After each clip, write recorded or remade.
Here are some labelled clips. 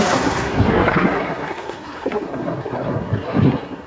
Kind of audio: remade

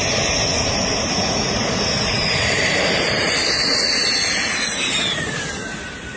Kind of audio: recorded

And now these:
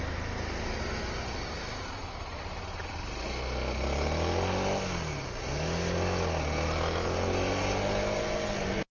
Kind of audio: recorded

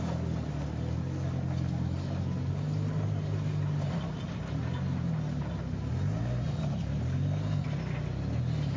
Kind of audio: recorded